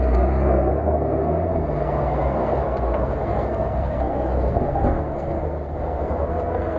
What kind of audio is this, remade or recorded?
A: remade